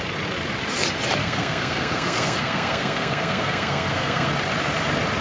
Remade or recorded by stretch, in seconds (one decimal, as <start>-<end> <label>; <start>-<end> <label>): 0.0-1.2 recorded; 1.2-4.3 remade; 4.3-5.2 recorded